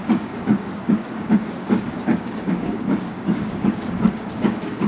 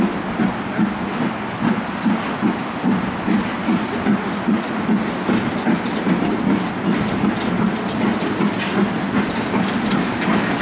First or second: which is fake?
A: first